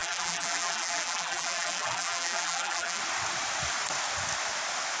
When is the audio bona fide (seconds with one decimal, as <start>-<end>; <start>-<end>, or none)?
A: 3.0-5.0